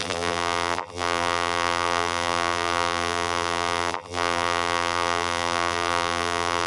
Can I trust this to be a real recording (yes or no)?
no